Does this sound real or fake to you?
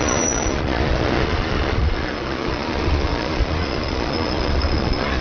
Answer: fake